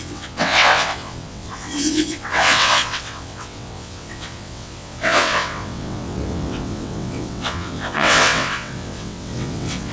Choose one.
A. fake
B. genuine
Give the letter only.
A